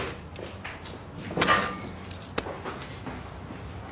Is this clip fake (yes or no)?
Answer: no